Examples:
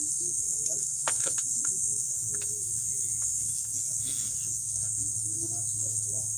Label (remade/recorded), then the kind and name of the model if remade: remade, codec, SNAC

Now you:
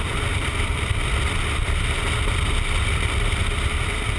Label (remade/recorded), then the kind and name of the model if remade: recorded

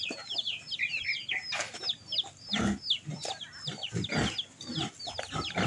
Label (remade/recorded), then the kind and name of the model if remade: recorded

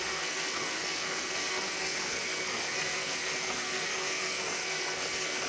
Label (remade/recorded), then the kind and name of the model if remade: remade, codec, SNAC